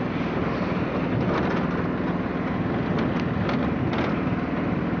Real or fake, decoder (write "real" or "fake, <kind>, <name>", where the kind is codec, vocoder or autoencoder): real